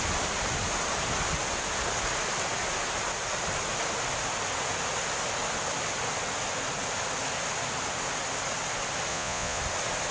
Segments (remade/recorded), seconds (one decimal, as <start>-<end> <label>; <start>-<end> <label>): 0.0-9.1 recorded; 9.1-9.6 remade; 9.6-10.1 recorded